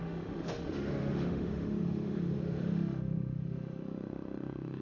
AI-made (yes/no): yes